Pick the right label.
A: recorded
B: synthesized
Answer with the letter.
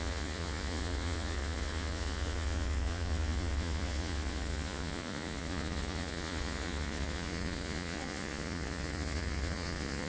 B